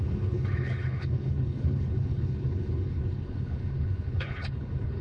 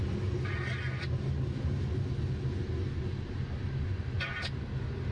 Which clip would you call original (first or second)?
second